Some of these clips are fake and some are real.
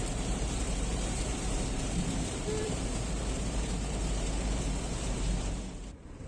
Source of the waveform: fake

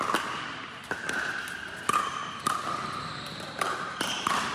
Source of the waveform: real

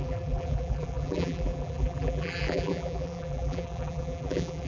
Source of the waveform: fake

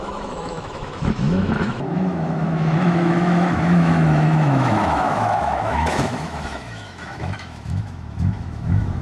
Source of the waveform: fake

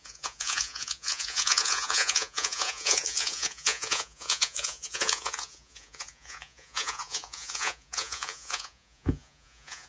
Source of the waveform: fake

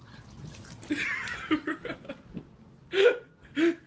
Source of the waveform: real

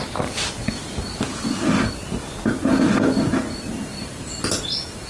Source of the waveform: real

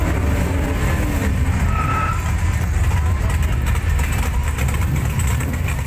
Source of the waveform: real